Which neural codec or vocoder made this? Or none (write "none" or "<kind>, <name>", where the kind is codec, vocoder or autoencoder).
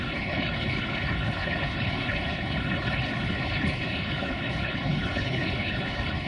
codec, HILCodec